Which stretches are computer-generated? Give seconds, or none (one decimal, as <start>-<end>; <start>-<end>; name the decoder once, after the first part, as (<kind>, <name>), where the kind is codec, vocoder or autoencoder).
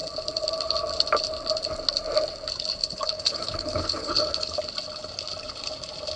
2.8-4.6 (codec, HILCodec)